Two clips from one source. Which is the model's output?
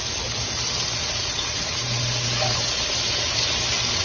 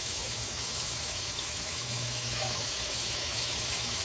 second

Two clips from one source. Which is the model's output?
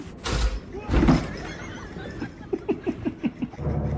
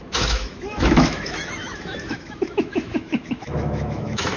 second